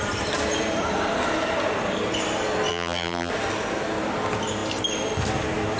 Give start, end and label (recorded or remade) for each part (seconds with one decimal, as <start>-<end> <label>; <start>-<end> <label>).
0.0-2.7 recorded; 2.7-3.3 remade; 3.3-5.8 recorded